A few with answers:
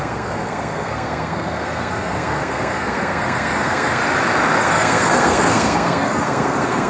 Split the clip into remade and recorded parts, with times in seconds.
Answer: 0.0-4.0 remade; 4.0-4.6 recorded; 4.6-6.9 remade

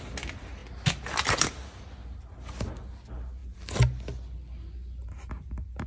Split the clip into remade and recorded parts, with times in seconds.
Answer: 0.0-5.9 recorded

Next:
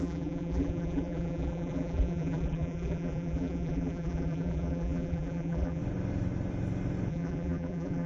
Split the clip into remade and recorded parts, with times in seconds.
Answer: 0.0-5.8 remade; 5.8-7.1 recorded; 7.1-8.1 remade

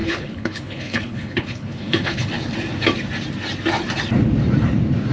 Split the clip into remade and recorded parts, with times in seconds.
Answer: 0.0-2.3 remade; 2.3-5.1 recorded

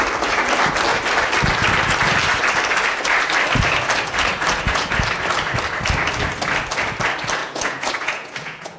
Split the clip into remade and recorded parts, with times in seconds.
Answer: 0.0-7.4 recorded; 7.4-8.8 remade